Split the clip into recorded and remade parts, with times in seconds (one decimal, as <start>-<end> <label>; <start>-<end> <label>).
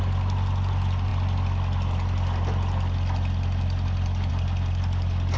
0.0-5.4 recorded